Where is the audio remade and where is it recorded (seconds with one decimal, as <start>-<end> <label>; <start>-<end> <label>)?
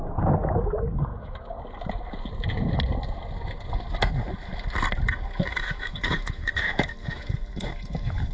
0.0-1.1 recorded; 1.1-1.6 remade; 1.6-5.5 recorded; 5.5-8.3 remade